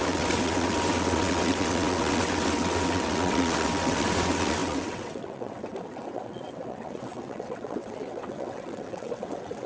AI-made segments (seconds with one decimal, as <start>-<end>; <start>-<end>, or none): 0.0-9.7

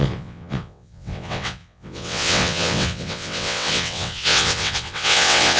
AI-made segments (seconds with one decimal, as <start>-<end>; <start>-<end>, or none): 0.0-5.6

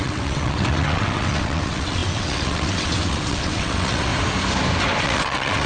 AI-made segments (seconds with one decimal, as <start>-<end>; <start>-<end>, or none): 0.0-4.1; 5.0-5.7

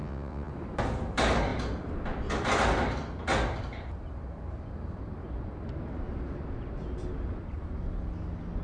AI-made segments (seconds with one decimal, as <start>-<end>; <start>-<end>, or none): 0.0-0.5

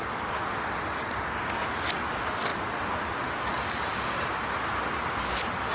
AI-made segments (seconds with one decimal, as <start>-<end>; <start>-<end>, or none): none

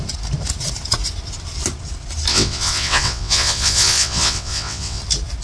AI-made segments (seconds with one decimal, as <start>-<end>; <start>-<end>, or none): 2.3-5.0

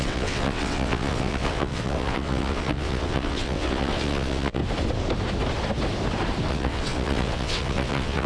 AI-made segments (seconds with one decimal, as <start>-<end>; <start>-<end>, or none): 0.0-4.6; 6.5-8.3